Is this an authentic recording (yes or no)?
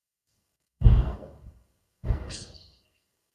no